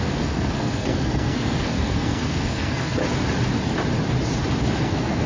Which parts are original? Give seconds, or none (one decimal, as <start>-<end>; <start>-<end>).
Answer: 3.0-4.8